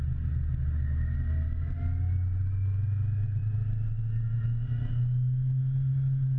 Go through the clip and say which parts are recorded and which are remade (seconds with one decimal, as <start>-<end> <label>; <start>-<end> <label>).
0.0-6.4 recorded